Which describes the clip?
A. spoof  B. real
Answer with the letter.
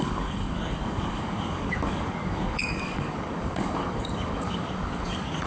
A